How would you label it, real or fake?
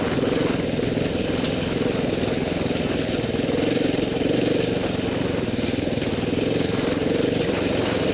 real